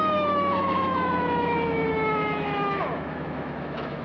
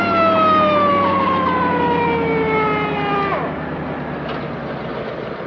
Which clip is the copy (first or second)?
first